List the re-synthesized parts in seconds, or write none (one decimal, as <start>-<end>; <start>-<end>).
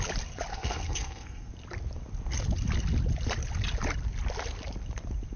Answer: 0.5-1.5